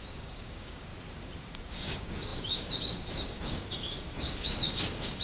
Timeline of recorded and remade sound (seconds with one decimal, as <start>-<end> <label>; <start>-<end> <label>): 0.0-0.9 remade; 0.9-1.4 recorded; 1.4-5.2 remade